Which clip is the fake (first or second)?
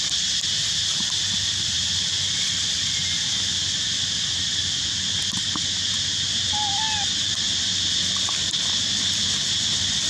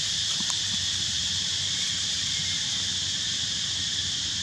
second